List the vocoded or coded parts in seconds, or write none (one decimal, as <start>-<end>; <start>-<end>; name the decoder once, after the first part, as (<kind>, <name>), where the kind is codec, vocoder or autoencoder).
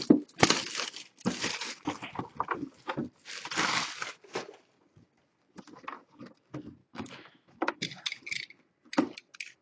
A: 6.8-7.7 (autoencoder, DAC-VAE)